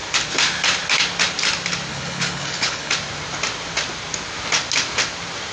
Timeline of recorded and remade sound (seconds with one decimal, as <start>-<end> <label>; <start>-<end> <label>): 0.0-1.9 recorded; 1.9-2.9 remade; 2.9-5.5 recorded

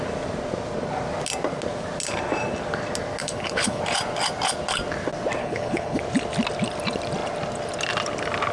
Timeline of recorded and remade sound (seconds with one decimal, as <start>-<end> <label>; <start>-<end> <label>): 0.0-3.2 recorded; 3.2-3.8 remade; 3.8-5.4 recorded; 5.4-6.0 remade; 6.0-8.5 recorded